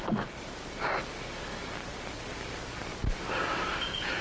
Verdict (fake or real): real